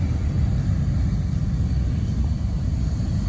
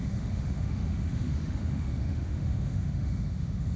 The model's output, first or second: second